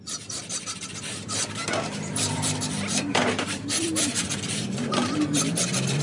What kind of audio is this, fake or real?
fake